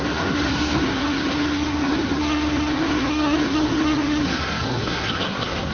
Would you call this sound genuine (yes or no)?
no